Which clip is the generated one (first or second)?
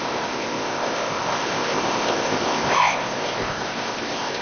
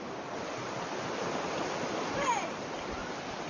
first